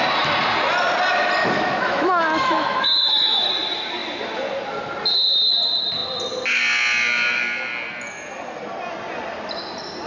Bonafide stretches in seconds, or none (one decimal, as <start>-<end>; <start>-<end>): 0.0-1.4; 3.5-10.1